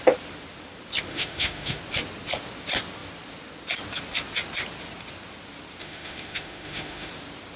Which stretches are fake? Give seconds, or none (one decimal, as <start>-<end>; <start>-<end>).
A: 1.1-1.8; 5.8-7.1